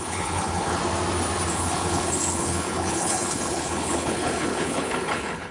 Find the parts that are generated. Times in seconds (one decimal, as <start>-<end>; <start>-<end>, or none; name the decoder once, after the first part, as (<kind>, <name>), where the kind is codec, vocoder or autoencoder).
0.0-0.8 (codec, HILCodec); 1.5-5.5